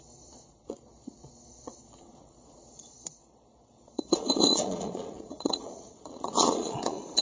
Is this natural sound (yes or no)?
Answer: no